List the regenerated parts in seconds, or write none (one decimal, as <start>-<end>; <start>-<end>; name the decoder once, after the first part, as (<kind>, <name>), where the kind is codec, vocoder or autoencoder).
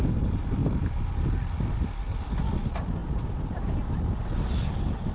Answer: none